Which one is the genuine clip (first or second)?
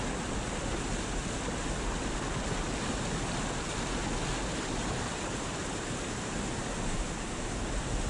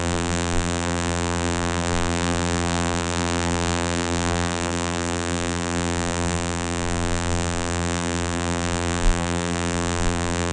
first